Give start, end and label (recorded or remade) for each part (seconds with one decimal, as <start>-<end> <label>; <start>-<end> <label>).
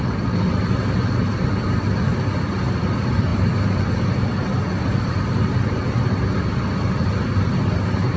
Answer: 0.0-8.2 recorded